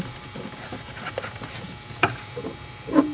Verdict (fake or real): fake